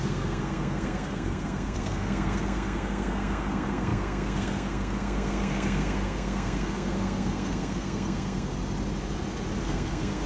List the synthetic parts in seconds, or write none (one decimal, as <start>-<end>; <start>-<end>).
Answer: 0.0-8.5; 9.6-10.3